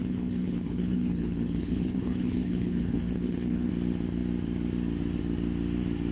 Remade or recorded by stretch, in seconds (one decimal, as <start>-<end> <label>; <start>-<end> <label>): 0.0-3.7 remade; 3.7-6.1 recorded

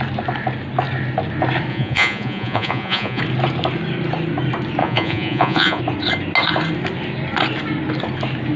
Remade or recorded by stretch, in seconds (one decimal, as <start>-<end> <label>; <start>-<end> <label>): 0.0-1.7 recorded; 1.7-3.2 remade; 3.2-4.8 recorded; 4.8-5.8 remade; 5.8-8.6 recorded

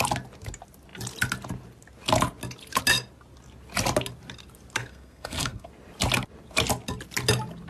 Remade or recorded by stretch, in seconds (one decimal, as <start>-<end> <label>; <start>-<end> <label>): 0.0-4.8 recorded; 4.8-5.7 remade; 5.7-7.7 recorded

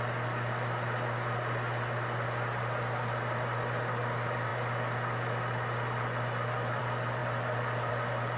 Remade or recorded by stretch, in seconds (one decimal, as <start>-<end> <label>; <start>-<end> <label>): 0.0-8.4 recorded